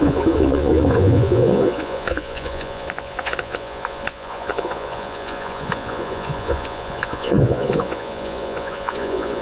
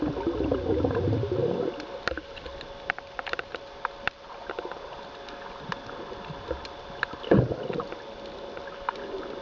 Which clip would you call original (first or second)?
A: second